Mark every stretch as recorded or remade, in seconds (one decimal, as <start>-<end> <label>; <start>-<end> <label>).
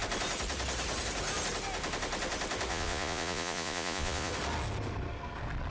0.0-2.7 recorded; 2.7-4.3 remade; 4.3-5.7 recorded